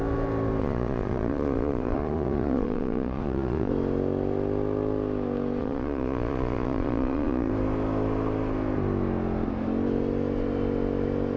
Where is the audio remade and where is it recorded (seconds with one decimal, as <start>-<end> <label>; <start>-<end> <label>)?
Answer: 0.0-0.6 recorded; 0.6-3.7 remade; 3.7-5.6 recorded; 5.6-7.5 remade; 7.5-11.4 recorded